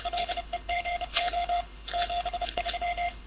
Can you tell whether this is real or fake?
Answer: fake